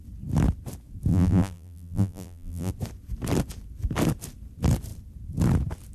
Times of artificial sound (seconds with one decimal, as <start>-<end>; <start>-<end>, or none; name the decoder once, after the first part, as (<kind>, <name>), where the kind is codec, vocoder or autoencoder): 1.1-2.7 (vocoder, BigVGAN v2)